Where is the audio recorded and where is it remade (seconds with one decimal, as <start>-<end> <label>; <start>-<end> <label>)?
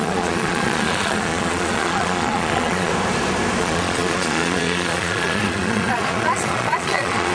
0.0-2.9 remade; 2.9-3.6 recorded; 3.6-7.3 remade